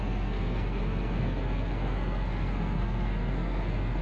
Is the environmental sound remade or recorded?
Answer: remade